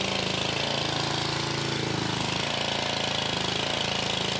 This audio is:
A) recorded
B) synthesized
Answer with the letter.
A